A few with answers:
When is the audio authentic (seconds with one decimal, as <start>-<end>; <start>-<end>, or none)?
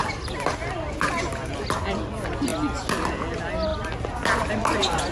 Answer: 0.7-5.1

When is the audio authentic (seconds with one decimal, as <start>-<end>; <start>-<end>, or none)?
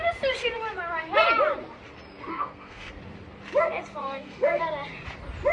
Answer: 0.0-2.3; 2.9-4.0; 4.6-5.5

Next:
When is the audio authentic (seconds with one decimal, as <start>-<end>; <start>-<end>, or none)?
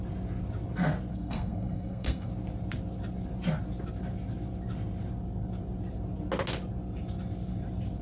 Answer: 0.0-1.1; 2.3-8.0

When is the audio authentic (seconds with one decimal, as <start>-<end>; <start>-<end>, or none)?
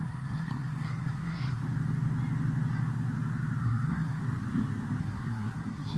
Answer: 1.6-3.6; 4.2-5.0